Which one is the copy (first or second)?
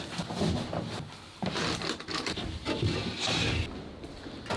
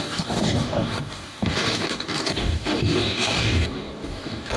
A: second